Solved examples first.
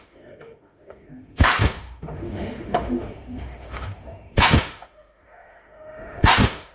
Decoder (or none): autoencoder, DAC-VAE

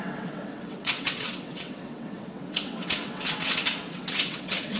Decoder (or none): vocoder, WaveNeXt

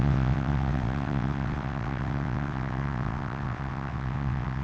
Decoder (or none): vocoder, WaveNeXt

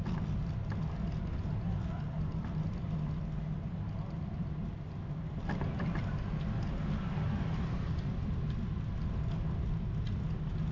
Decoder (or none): none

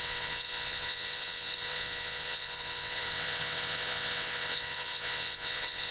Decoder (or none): vocoder, WaveNeXt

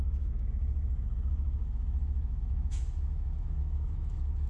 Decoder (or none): autoencoder, DAC-VAE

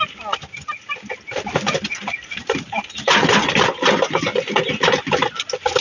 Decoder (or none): none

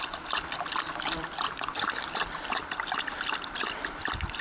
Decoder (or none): none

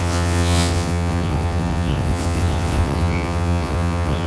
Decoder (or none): vocoder, WaveNeXt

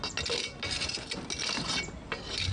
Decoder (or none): none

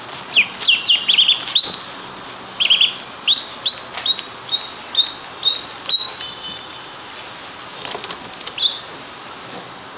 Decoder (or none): none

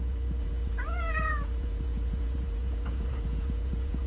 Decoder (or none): vocoder, Vocos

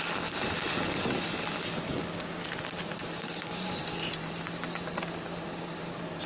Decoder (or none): none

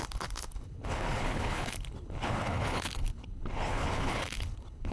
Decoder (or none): codec, HILCodec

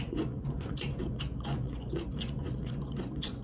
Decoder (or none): vocoder, Vocos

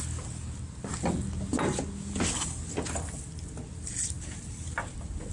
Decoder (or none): none